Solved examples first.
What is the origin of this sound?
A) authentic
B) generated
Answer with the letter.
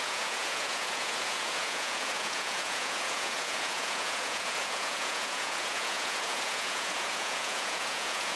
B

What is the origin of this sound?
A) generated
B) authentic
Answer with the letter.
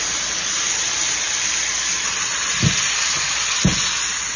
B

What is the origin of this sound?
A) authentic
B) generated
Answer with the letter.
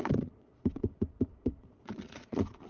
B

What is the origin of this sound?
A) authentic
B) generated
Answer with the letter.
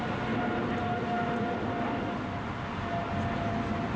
A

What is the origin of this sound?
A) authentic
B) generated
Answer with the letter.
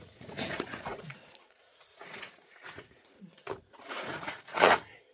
B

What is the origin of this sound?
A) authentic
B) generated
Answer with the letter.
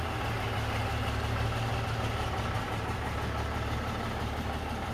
A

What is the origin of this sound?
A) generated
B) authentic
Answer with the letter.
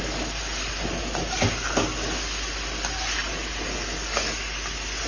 B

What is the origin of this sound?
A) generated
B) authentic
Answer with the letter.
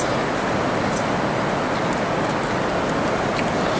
B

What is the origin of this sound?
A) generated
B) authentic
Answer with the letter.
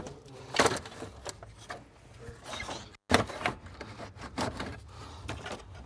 B